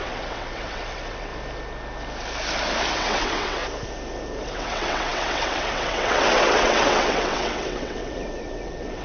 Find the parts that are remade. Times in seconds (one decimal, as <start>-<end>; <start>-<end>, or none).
0.0-1.3; 2.9-3.6; 4.4-9.0